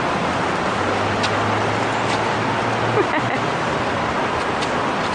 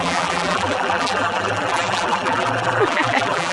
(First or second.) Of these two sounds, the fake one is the second